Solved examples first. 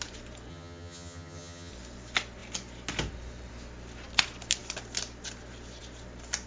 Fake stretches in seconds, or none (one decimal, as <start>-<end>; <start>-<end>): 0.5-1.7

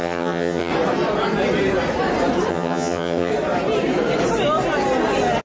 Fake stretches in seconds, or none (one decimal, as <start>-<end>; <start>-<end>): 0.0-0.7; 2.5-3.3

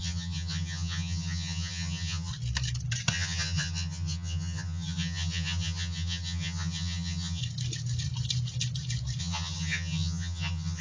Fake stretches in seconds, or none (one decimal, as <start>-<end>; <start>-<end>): 0.0-2.3; 3.1-7.4; 9.2-10.8